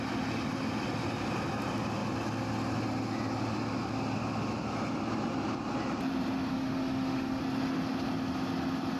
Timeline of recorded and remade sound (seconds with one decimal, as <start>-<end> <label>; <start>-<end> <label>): 0.0-6.5 recorded; 6.5-7.4 remade; 7.4-9.0 recorded